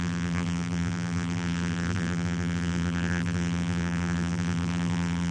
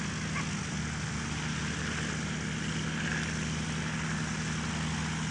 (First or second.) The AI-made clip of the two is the first